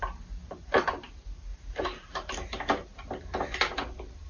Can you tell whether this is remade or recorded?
recorded